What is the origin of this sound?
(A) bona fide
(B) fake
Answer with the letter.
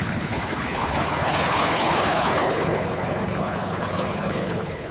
B